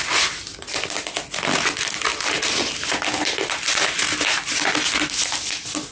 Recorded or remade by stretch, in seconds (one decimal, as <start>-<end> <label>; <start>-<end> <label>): 0.0-5.9 recorded